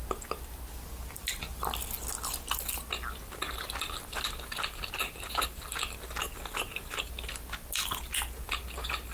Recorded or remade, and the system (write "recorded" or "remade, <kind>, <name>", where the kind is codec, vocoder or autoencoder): recorded